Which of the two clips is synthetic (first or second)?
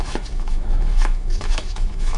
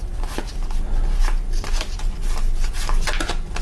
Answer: first